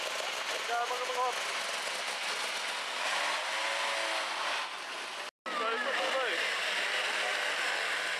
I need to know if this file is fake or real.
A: real